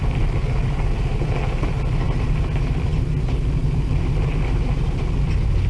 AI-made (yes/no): no